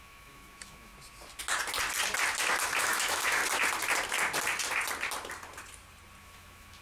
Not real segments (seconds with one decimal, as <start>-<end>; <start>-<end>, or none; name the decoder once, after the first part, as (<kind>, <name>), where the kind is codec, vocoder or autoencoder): 0.0-0.9 (autoencoder, DAC-VAE); 2.8-3.4; 6.2-6.8